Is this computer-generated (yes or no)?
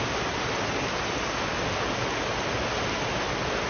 no